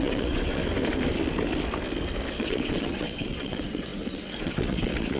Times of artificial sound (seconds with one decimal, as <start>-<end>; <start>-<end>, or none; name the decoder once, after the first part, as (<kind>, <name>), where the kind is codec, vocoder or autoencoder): 0.0-0.6 (vocoder, WaveNeXt); 2.4-5.2